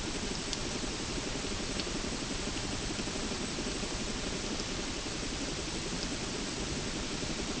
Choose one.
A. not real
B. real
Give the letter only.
B